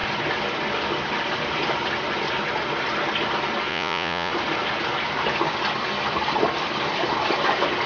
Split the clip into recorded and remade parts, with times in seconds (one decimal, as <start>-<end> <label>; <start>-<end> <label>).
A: 0.0-3.7 recorded; 3.7-4.3 remade; 4.3-7.9 recorded